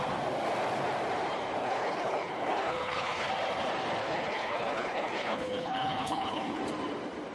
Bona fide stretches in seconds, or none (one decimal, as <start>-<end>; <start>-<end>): 0.0-1.6; 3.3-4.0; 6.6-7.3